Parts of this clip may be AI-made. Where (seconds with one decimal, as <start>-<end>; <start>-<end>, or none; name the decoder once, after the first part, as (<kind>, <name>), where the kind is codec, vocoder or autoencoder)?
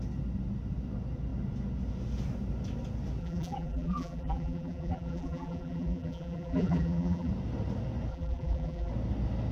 3.2-7.3 (vocoder, BigVGAN v2); 8.1-8.9